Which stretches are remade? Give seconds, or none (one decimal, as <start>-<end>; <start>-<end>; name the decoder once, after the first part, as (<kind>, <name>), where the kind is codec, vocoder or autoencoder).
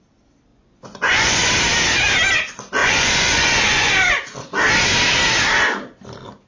0.5-1.5 (vocoder, Vocos); 2.8-3.9